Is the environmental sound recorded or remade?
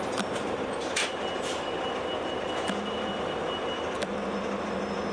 recorded